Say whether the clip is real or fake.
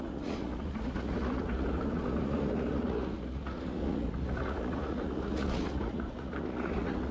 fake